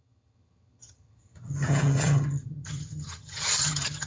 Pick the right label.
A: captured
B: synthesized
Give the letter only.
B